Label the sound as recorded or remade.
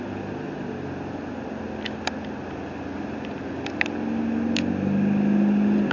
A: recorded